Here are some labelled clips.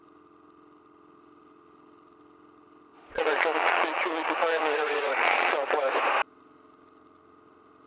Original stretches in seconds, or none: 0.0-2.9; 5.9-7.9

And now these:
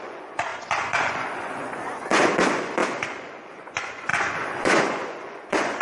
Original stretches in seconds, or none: none

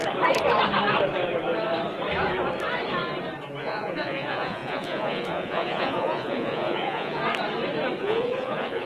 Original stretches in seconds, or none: 0.0-3.6; 7.2-8.0

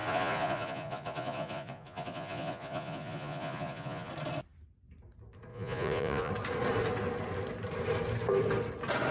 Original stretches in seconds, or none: 4.1-5.5; 6.3-9.1

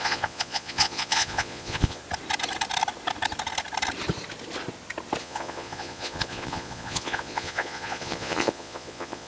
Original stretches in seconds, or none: 2.0-5.2

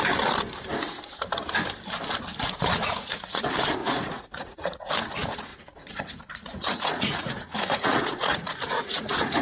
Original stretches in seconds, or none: 0.0-2.8; 3.4-3.8; 4.9-5.5

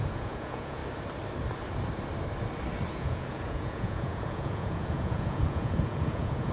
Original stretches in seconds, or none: 0.8-2.9

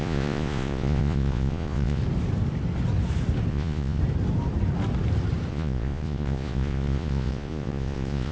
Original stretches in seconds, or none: 2.0-3.5; 4.0-5.5